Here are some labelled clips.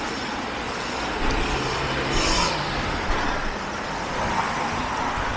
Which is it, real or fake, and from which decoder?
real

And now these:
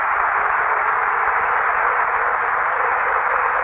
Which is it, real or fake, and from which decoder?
real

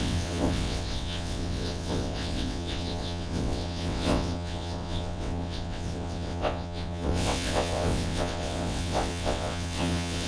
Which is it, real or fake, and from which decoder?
fake, vocoder, WaveNeXt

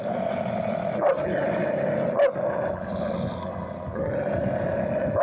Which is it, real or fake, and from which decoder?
real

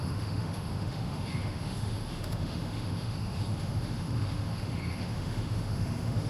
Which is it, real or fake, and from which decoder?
fake, autoencoder, DAC-VAE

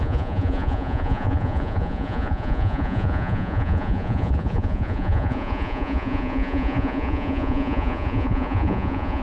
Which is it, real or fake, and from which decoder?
fake, vocoder, Vocos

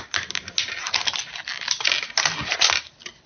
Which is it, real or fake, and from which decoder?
real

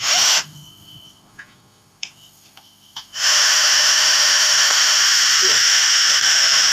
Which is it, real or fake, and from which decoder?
fake, autoencoder, DAC-VAE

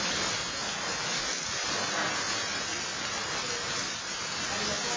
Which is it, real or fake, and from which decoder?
real